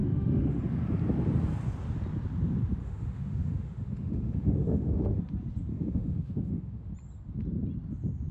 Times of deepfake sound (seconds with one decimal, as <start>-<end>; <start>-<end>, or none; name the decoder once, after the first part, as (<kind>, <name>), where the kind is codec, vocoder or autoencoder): 0.0-0.6 (autoencoder, DAC-VAE); 2.8-5.2; 5.7-6.9